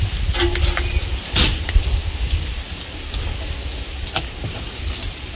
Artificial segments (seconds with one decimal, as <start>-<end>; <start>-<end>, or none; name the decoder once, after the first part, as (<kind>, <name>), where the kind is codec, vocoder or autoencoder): none